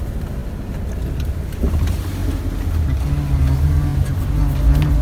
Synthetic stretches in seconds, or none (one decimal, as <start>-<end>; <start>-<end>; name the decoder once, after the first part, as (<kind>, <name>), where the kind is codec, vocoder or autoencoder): none